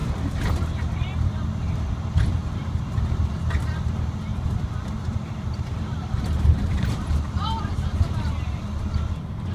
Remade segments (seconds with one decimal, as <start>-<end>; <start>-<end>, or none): 0.0-0.6; 2.4-3.3; 4.3-7.6